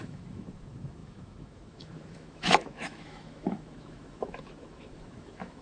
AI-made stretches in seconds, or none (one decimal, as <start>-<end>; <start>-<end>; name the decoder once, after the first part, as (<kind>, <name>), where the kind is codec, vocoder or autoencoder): 0.0-5.6 (autoencoder, DAC-VAE)